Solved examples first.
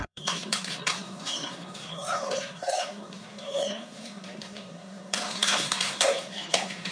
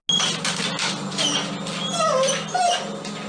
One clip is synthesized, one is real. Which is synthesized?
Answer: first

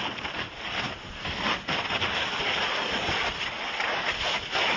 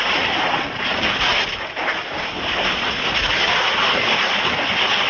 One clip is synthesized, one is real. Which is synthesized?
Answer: first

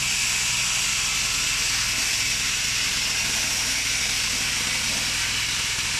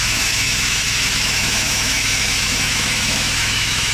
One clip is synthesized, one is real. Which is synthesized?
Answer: second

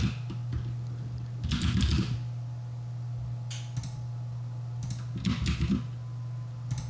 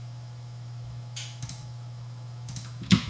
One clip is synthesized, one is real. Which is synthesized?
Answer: second